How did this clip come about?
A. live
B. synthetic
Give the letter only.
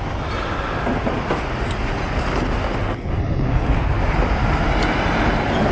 A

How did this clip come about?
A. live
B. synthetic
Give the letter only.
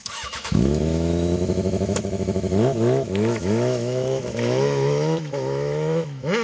B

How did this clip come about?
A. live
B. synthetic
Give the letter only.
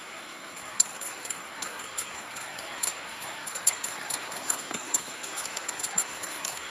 B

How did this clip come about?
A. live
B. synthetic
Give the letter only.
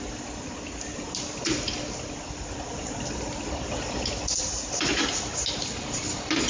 A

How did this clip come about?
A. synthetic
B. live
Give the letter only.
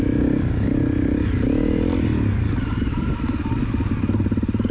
B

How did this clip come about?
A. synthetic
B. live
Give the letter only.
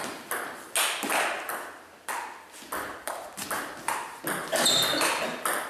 B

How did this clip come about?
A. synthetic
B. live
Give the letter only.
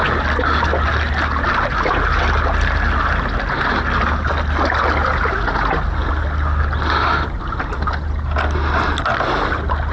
B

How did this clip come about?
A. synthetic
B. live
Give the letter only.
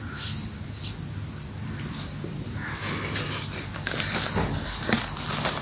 B